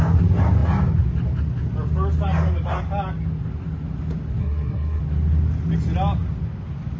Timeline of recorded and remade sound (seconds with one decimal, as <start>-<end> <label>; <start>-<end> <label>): 0.0-4.4 recorded; 4.4-5.0 remade; 5.0-7.0 recorded